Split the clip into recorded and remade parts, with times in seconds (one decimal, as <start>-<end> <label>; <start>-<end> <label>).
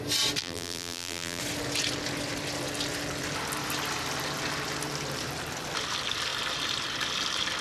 0.0-0.4 recorded; 0.4-1.4 remade; 1.4-7.6 recorded